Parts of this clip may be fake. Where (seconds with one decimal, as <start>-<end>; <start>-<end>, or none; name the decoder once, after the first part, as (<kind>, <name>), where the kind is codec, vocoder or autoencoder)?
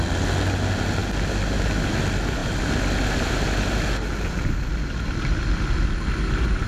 none